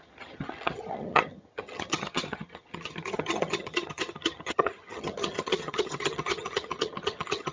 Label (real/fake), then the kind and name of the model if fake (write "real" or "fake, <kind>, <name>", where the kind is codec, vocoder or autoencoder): fake, vocoder, HiFi-GAN